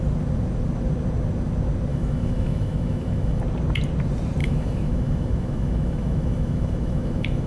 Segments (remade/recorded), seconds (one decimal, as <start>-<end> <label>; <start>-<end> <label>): 0.0-1.9 recorded; 1.9-3.4 remade; 3.4-4.4 recorded; 4.4-7.5 remade